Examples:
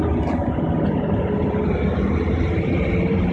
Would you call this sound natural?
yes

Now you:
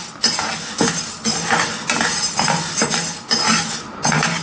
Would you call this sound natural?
yes